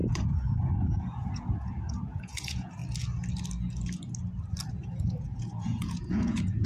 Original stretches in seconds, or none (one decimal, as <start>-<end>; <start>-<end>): 2.8-4.7